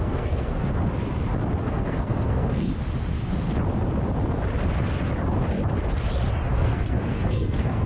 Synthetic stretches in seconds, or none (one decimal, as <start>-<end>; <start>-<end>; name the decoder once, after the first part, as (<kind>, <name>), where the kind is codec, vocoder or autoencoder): 0.0-0.8 (codec, SNAC); 1.6-2.7; 6.5-7.9